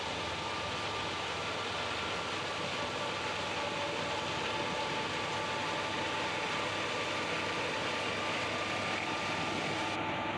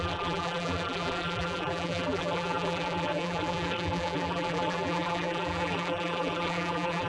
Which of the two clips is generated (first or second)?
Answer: second